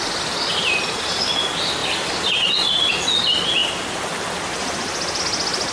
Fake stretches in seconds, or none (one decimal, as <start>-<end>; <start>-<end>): 1.8-2.9; 3.6-5.2